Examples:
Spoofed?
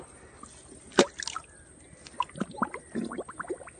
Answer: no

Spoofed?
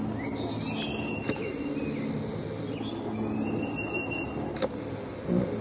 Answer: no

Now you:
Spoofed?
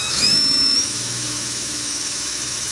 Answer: yes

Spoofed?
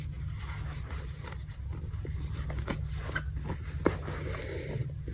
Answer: no